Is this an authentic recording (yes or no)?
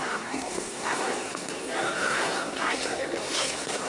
no